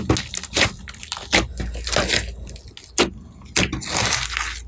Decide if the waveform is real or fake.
real